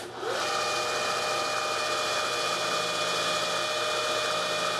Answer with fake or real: real